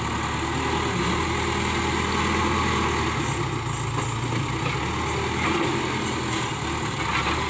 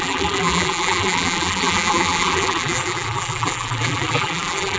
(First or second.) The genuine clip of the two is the first